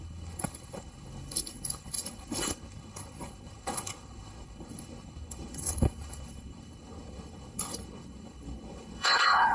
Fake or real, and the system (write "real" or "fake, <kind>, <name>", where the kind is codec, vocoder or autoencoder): fake, codec, HILCodec